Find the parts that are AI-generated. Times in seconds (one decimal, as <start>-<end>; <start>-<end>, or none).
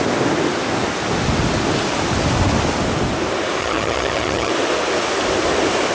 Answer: 3.6-4.5